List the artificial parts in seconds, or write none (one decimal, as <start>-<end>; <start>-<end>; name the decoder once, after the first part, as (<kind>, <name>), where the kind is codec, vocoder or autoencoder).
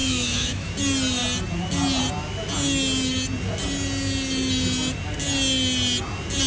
0.0-0.7 (autoencoder, DAC-VAE)